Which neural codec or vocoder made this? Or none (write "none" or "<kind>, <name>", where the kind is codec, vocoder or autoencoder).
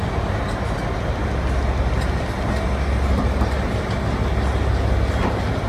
none